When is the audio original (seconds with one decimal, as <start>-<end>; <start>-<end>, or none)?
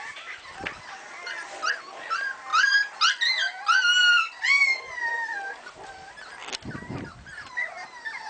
0.0-8.3